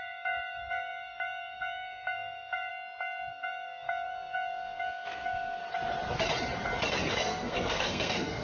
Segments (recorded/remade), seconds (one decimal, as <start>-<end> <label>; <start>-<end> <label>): 0.0-2.7 remade; 2.7-3.3 recorded; 3.3-5.6 remade; 5.6-7.1 recorded; 7.1-8.4 remade